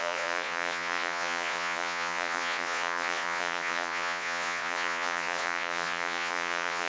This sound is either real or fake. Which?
fake